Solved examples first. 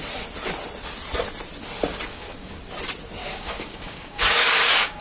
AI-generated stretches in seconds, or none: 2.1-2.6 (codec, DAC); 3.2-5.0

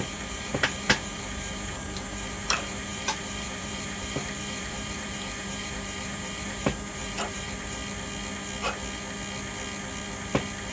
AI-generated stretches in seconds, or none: 0.0-7.8 (vocoder, BigVGAN v2)

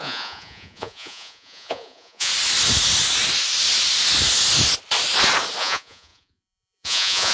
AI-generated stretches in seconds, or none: 0.0-2.3 (vocoder, Vocos); 5.6-7.3

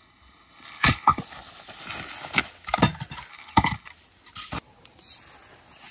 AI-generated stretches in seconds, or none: 0.0-1.2 (codec, HILCodec); 3.3-3.9

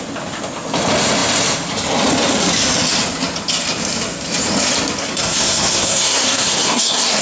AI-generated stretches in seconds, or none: 5.0-7.2 (codec, SNAC)